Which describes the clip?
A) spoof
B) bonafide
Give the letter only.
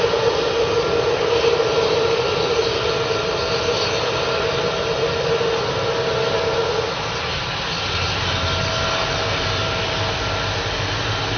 B